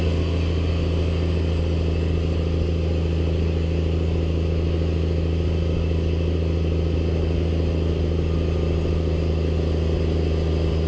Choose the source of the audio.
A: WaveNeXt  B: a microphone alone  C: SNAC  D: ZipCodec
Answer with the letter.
B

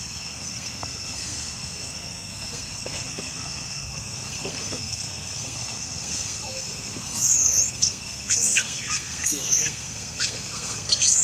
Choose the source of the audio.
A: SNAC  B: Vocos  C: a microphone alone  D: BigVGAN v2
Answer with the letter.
A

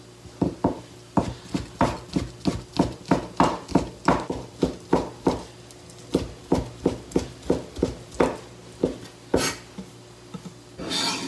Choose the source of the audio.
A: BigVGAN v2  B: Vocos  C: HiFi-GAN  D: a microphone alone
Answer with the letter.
D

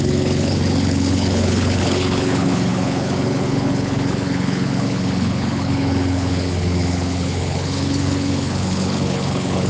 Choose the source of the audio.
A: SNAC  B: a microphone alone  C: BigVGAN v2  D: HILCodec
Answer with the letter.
D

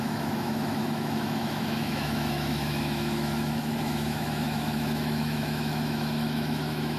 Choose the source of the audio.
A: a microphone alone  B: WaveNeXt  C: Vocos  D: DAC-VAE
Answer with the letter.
D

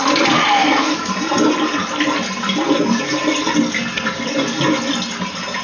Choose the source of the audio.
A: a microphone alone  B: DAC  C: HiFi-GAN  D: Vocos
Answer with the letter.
A